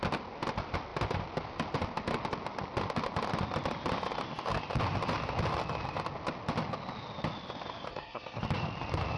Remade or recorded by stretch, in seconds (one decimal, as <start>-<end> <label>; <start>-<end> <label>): 0.0-7.9 recorded; 7.9-8.4 remade; 8.4-9.2 recorded